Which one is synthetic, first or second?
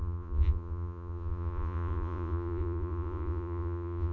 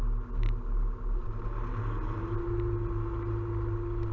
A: first